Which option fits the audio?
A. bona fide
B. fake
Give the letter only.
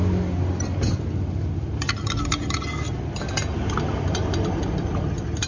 A